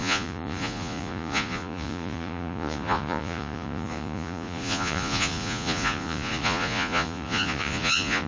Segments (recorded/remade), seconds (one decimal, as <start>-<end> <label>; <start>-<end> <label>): 0.0-8.3 remade